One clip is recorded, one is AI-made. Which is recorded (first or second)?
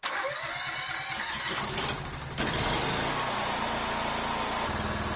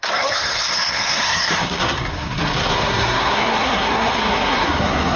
first